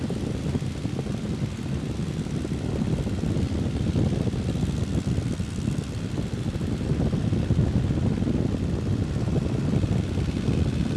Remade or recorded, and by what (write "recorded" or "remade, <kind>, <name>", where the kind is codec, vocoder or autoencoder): recorded